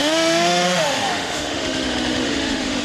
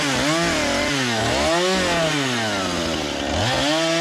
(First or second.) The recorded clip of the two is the second